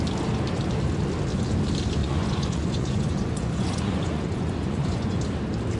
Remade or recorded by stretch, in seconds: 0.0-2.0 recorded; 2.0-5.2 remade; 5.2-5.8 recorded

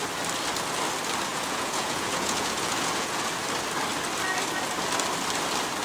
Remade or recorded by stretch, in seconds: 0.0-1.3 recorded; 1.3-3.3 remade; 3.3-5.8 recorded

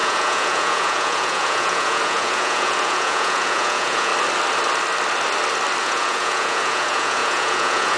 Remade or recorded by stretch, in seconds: 0.0-4.1 remade; 4.1-5.8 recorded; 5.8-8.0 remade